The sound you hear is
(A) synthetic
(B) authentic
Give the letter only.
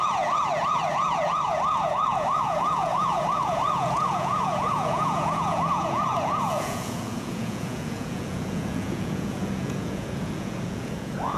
A